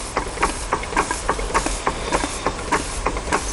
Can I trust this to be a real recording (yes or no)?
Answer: no